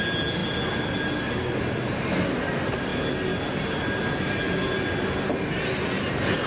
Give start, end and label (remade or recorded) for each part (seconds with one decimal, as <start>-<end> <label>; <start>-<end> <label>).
0.0-6.5 recorded